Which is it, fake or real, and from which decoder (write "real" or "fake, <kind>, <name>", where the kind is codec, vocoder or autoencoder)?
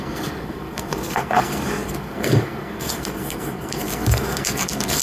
fake, codec, SNAC